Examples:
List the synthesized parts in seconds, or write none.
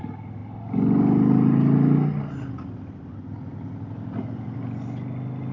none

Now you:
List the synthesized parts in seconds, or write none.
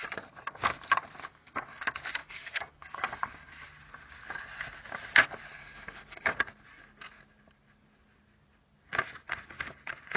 1.3-1.8 (codec, DAC); 2.2-3.5; 5.6-6.3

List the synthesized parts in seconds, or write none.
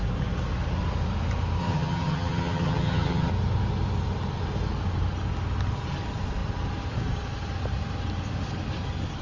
1.6-3.3 (vocoder, HiFi-GAN)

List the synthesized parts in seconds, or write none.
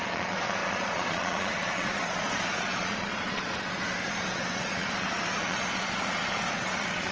0.0-7.1 (vocoder, Vocos)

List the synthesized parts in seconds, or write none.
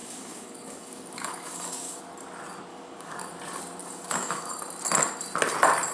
0.0-2.0 (codec, DAC); 2.7-3.3; 3.8-4.5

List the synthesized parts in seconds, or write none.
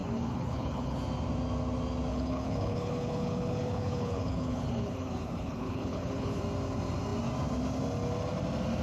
0.0-1.0 (codec, HILCodec); 2.1-6.4